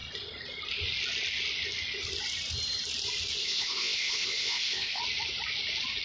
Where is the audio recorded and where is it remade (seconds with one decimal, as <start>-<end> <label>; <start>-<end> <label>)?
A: 0.0-3.4 recorded; 3.4-5.0 remade; 5.0-6.0 recorded